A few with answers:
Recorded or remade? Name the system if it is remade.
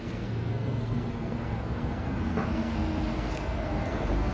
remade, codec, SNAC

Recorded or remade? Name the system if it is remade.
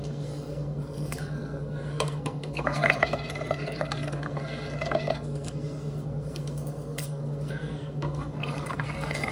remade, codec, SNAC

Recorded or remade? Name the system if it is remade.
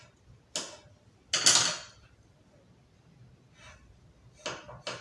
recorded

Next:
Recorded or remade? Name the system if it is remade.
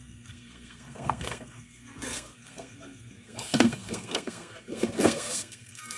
remade, codec, SNAC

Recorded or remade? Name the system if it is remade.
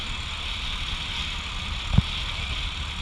recorded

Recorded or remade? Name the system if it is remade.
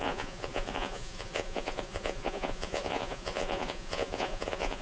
remade, vocoder, Vocos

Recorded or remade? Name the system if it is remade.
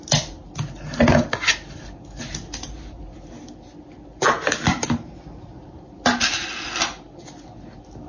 recorded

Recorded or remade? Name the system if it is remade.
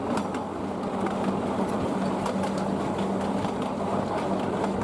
recorded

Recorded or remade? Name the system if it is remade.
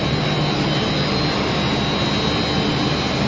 recorded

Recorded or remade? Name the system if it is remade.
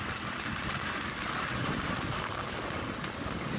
recorded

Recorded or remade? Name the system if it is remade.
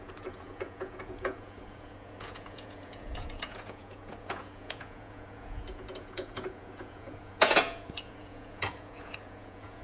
remade, vocoder, Vocos